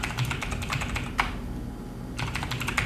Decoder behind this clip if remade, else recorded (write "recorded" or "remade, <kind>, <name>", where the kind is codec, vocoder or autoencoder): recorded